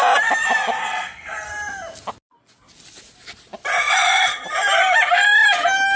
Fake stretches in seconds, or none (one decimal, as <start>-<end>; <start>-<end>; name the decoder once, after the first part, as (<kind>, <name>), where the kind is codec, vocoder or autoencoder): 0.8-1.5 (codec, SNAC)